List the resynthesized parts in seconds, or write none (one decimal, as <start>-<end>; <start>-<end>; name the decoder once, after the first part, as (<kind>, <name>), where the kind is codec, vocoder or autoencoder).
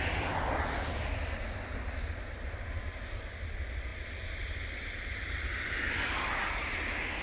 none